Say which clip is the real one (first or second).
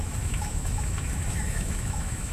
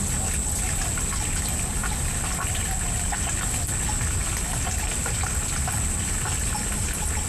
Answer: second